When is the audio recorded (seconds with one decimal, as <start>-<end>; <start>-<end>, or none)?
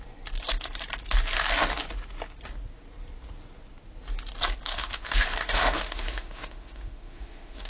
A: 0.0-4.7